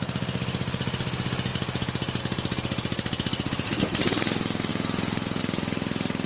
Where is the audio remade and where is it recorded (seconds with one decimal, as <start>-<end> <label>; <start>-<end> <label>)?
0.0-4.7 recorded; 4.7-5.4 remade; 5.4-6.3 recorded